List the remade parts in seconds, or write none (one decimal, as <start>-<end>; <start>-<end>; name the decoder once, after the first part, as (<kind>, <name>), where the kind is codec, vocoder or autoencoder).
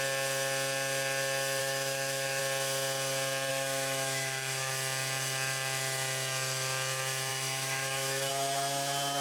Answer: 1.6-2.4 (autoencoder, DAC-VAE); 3.5-4.7; 7.3-8.3